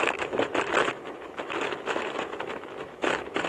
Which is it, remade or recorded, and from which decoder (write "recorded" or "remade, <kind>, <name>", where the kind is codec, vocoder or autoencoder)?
remade, autoencoder, DAC-VAE